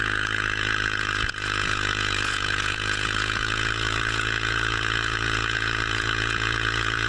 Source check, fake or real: fake